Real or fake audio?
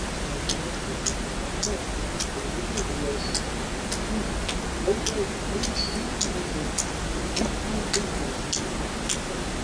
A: real